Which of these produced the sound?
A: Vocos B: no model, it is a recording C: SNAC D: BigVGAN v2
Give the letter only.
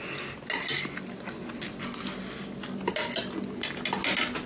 B